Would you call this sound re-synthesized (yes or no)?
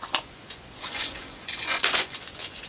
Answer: yes